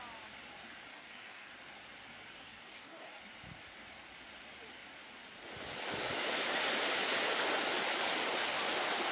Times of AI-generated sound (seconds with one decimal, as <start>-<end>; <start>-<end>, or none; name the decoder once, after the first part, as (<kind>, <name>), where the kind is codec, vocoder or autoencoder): 0.9-1.5 (codec, DAC); 2.3-3.2